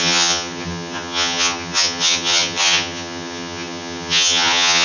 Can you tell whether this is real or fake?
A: fake